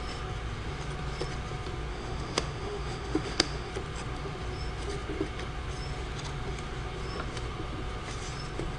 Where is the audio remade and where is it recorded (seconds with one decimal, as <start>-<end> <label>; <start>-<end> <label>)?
0.0-1.9 recorded; 1.9-3.7 remade; 3.7-8.8 recorded